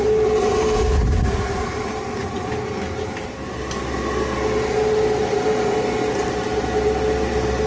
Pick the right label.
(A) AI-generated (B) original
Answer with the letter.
B